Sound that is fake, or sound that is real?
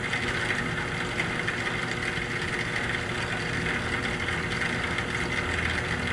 real